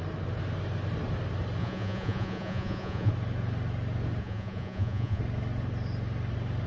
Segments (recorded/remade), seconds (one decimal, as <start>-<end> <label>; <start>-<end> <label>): 0.0-1.6 recorded; 1.6-3.1 remade; 3.1-4.2 recorded; 4.2-5.2 remade; 5.2-6.7 recorded